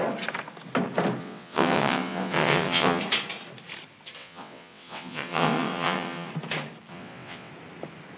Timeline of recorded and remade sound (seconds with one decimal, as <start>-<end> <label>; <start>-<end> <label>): 0.0-1.2 recorded; 1.2-3.0 remade; 3.0-4.2 recorded; 4.2-6.3 remade; 6.3-6.9 recorded; 6.9-7.5 remade; 7.5-8.2 recorded